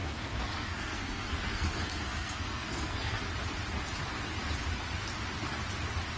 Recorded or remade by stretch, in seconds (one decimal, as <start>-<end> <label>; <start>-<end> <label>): 0.0-3.2 remade; 3.2-6.2 recorded